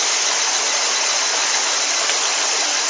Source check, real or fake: real